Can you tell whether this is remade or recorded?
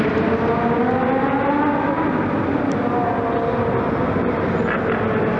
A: recorded